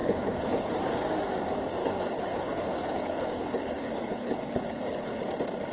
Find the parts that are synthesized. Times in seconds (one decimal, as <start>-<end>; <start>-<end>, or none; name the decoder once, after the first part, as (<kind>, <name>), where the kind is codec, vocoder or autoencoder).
0.0-0.7 (codec, HILCodec); 1.8-5.2